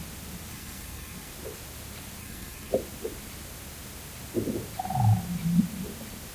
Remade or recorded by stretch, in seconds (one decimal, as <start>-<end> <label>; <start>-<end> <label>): 0.0-0.5 recorded; 0.5-1.3 remade; 1.3-2.2 recorded; 2.2-2.7 remade; 2.7-6.3 recorded